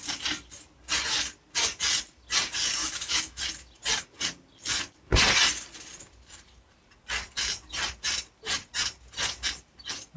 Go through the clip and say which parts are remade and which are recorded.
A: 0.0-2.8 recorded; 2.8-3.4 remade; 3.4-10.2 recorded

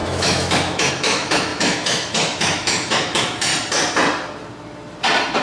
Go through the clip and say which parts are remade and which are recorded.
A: 0.0-3.5 remade; 3.5-5.4 recorded

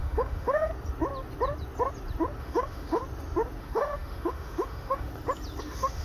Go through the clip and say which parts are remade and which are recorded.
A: 0.0-0.7 remade; 0.7-2.4 recorded; 2.4-3.0 remade; 3.0-3.6 recorded; 3.6-5.1 remade; 5.1-5.6 recorded; 5.6-6.0 remade

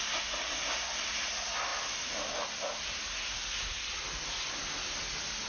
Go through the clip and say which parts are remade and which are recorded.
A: 0.0-5.5 recorded

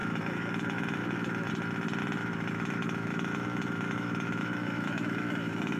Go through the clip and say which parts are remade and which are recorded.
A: 0.0-1.5 remade; 1.5-2.2 recorded; 2.2-5.8 remade

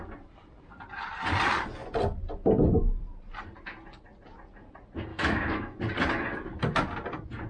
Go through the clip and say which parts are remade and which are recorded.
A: 0.0-5.1 recorded; 5.1-5.8 remade; 5.8-7.5 recorded

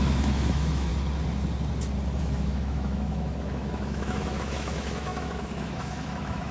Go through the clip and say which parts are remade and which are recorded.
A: 0.0-0.9 remade; 0.9-2.2 recorded; 2.2-6.5 remade

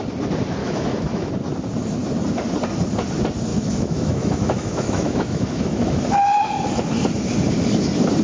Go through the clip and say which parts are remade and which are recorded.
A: 0.0-0.6 recorded; 0.6-1.3 remade; 1.3-3.5 recorded; 3.5-6.0 remade; 6.0-8.2 recorded